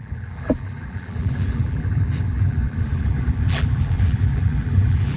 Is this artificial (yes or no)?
yes